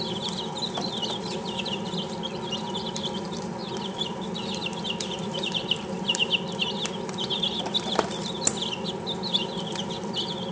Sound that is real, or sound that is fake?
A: fake